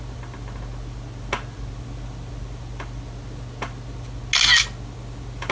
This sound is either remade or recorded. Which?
recorded